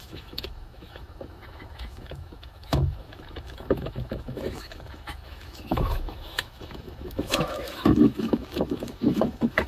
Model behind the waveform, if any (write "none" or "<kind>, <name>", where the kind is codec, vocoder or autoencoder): autoencoder, DAC-VAE